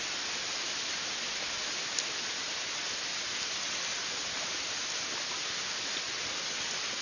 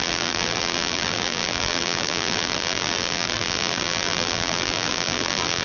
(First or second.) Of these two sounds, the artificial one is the second